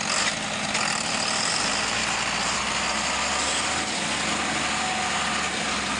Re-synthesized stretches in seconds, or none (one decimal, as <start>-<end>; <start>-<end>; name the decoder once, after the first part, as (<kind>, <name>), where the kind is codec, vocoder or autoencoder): none